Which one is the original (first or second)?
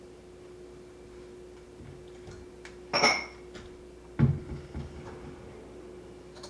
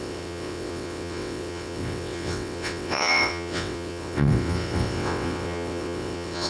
first